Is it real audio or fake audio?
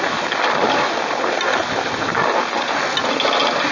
real